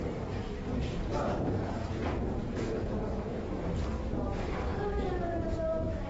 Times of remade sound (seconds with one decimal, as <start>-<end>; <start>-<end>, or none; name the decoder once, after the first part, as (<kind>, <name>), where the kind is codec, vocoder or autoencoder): 1.1-3.4 (vocoder, Vocos)